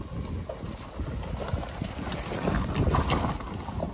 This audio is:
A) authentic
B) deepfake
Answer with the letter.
A